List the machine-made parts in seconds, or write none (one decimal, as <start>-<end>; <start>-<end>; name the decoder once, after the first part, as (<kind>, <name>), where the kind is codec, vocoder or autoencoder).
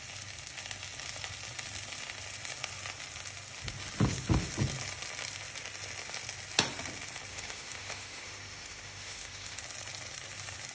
7.3-9.6 (autoencoder, DAC-VAE)